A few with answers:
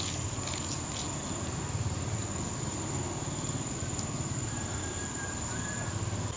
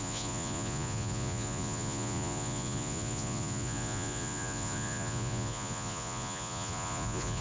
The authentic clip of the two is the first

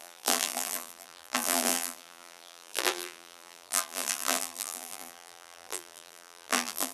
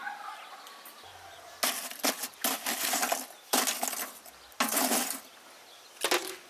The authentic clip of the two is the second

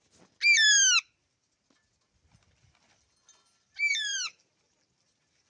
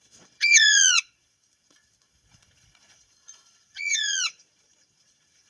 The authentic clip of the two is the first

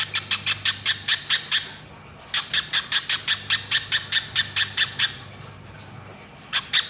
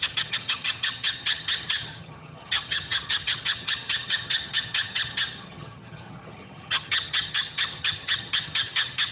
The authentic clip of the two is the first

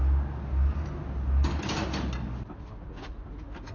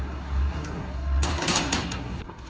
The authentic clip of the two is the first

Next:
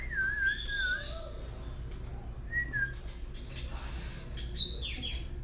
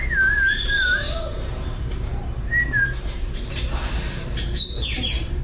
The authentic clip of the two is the first